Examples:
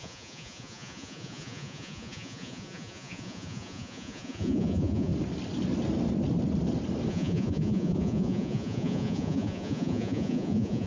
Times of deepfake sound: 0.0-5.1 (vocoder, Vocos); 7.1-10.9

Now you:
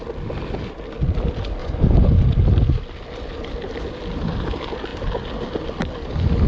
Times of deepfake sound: 1.6-2.2 (vocoder, Vocos)

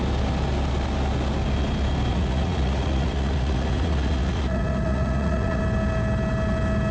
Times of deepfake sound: 2.1-5.6 (vocoder, Vocos)

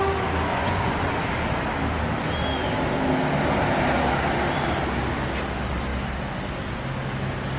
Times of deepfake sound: 0.5-1.2 (vocoder, Vocos)

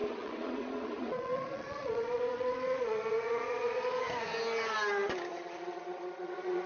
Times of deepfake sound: 0.0-4.0 (vocoder, Vocos); 5.3-6.7